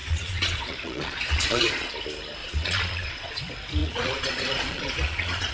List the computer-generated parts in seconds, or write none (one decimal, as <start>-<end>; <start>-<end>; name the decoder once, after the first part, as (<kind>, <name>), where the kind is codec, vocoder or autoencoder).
0.0-1.9 (vocoder, Vocos); 2.4-3.4; 3.8-5.5